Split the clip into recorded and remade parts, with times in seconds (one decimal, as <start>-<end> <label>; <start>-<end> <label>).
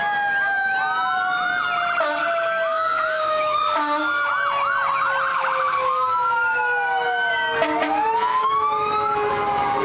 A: 0.0-2.2 recorded; 2.2-4.3 remade; 4.3-5.3 recorded; 5.3-7.3 remade; 7.3-8.3 recorded; 8.3-9.3 remade; 9.3-9.8 recorded